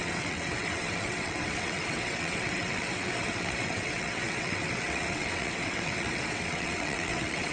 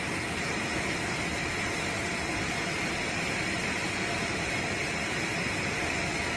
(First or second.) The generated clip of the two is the first